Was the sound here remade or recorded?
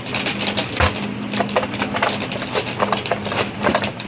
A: remade